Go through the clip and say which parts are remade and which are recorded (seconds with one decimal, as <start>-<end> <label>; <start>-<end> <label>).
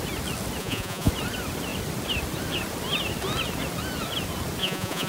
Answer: 0.0-0.6 recorded; 0.6-1.1 remade; 1.1-4.6 recorded; 4.6-5.1 remade